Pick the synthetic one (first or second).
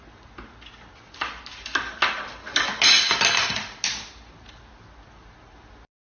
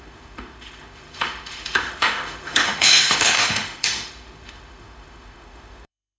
second